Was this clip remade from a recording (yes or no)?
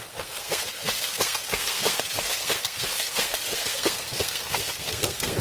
yes